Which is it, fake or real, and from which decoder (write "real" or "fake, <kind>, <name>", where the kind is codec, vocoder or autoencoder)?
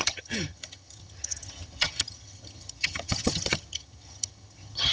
fake, vocoder, HiFi-GAN